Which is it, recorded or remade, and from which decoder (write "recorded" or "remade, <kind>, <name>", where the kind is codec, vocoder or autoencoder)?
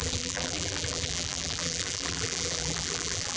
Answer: remade, vocoder, BigVGAN v2